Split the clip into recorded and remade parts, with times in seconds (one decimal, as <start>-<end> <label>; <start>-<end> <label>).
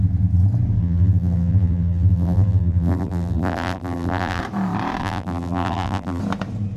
0.0-0.8 recorded; 0.8-4.4 remade; 4.4-5.0 recorded; 5.0-6.2 remade; 6.2-6.8 recorded